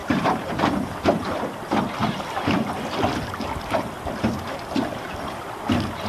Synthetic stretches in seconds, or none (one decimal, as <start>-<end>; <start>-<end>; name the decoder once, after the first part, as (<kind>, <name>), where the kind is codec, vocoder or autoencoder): 0.0-1.3 (vocoder, BigVGAN v2); 2.0-3.0